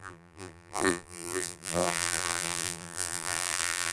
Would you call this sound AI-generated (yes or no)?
yes